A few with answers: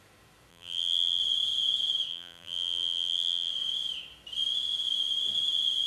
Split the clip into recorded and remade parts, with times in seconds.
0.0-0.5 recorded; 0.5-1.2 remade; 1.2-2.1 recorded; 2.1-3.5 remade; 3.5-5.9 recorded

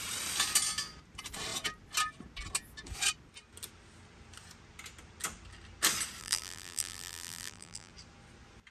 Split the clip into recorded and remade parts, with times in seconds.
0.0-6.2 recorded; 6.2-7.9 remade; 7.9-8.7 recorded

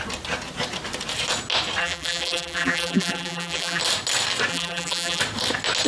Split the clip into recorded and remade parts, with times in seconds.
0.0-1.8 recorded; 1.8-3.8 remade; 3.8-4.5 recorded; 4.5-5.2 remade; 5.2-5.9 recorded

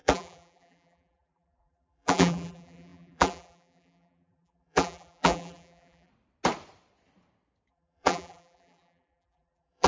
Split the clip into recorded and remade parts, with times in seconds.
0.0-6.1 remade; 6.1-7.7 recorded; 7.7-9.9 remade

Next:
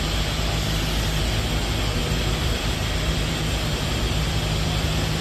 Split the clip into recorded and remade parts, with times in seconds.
0.0-2.0 recorded; 2.0-5.2 remade

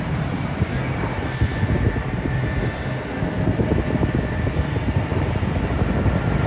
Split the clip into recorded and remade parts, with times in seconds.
0.0-5.1 recorded; 5.1-5.8 remade; 5.8-6.5 recorded

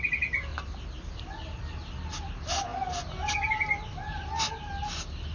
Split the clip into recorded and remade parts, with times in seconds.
0.0-0.5 recorded; 0.5-2.1 remade; 2.1-5.3 recorded